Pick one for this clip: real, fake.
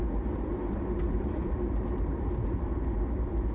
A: fake